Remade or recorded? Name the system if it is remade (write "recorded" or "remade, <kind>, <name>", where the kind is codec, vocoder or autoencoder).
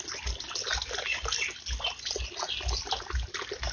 recorded